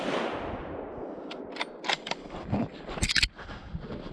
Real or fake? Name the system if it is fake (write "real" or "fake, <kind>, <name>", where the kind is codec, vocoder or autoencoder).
real